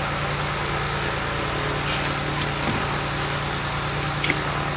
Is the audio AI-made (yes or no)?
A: no